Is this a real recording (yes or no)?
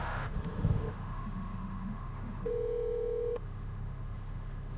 no